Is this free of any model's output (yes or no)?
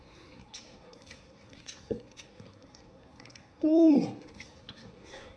no